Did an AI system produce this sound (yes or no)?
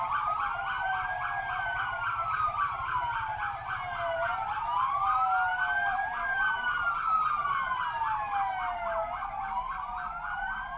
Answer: no